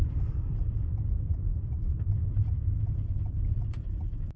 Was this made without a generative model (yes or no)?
no